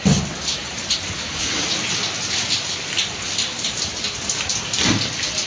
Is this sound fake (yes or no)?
no